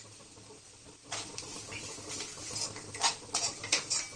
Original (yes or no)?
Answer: yes